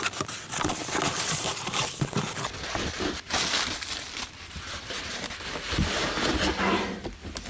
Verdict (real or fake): real